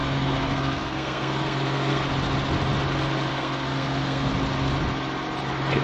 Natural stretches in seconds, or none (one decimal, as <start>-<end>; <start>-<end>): 2.1-3.3; 4.3-5.8